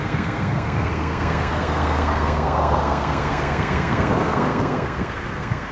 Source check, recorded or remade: remade